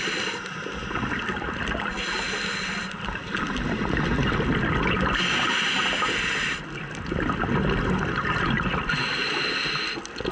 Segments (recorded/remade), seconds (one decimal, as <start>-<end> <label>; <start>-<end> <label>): 0.0-10.3 recorded